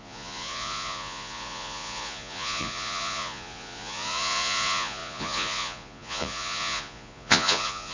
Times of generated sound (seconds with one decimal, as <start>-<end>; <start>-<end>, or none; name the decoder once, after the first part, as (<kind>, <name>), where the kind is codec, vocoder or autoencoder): 0.0-7.9 (vocoder, Vocos)